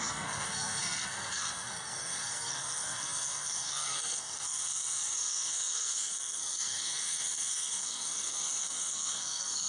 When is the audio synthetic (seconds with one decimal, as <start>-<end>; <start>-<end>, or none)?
0.0-9.7